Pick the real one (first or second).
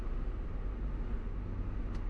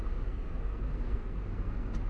first